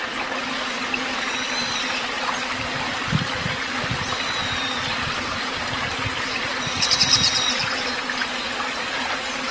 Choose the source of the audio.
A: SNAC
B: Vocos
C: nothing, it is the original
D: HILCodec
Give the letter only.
C